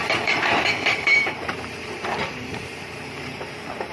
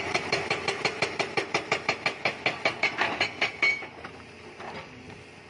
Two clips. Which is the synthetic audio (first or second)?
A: first